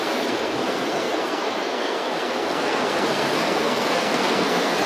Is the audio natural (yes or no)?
no